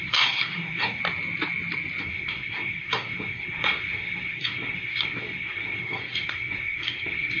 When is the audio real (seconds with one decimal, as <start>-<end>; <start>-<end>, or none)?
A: 1.0-2.0